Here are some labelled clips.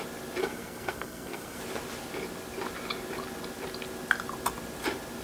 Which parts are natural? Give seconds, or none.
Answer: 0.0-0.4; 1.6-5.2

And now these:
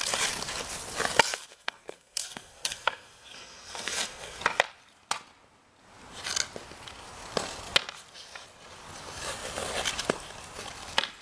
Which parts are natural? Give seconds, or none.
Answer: 0.0-1.3; 4.4-11.2